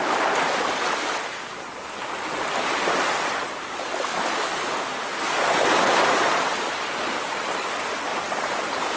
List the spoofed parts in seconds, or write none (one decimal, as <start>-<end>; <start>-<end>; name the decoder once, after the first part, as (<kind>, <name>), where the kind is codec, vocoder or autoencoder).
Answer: none